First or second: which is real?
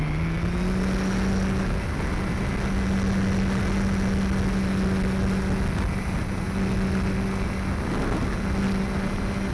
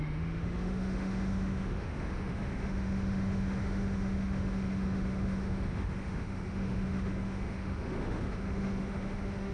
first